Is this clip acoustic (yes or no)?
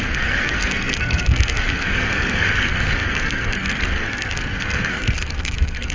no